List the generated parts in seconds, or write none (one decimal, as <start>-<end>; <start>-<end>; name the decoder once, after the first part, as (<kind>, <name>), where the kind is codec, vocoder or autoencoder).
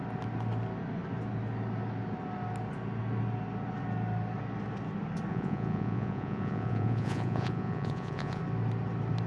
5.3-8.4 (vocoder, Vocos)